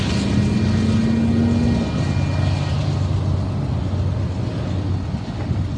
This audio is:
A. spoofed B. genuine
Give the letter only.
B